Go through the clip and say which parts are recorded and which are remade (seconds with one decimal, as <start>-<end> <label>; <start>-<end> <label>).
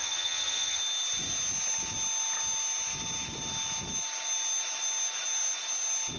0.0-0.8 remade; 0.8-6.2 recorded